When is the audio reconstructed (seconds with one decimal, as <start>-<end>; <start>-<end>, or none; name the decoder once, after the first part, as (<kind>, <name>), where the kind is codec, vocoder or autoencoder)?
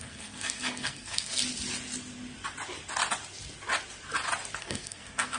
0.0-1.4 (codec, SNAC); 4.6-5.4